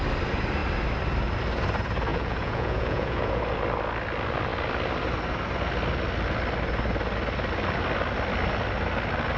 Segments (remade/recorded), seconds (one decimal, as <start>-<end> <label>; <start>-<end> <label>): 0.0-2.1 recorded; 2.1-3.4 remade; 3.4-9.4 recorded